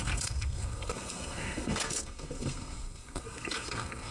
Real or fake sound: fake